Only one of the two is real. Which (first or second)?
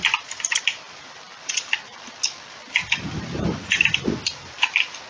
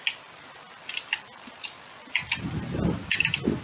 second